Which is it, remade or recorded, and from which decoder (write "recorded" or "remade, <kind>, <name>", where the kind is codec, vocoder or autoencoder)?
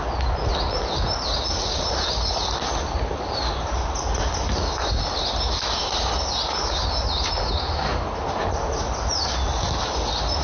recorded